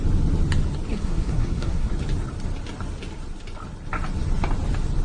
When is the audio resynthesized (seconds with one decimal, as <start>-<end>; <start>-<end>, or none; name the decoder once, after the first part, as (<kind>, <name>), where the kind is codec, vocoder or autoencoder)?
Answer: 0.9-1.9 (codec, SNAC)